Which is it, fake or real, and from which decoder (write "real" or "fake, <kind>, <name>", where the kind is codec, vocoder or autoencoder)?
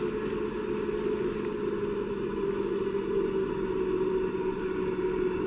real